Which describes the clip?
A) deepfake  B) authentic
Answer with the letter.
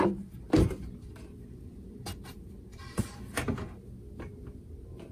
B